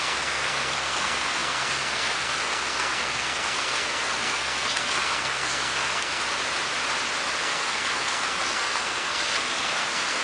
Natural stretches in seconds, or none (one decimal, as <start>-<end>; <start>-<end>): 6.2-7.4